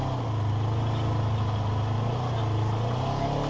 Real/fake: real